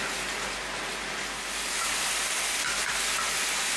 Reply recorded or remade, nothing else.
recorded